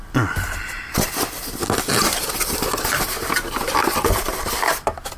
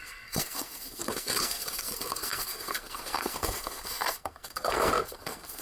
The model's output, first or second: second